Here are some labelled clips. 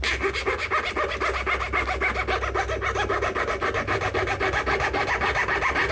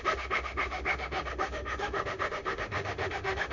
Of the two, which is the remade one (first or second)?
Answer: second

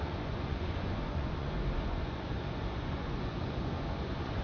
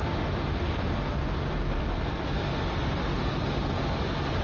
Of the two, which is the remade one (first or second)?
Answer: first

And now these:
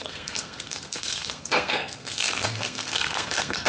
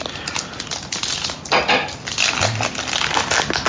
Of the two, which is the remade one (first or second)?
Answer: first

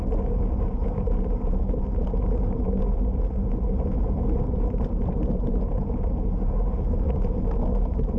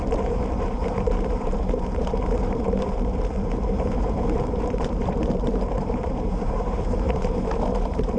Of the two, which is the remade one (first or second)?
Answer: second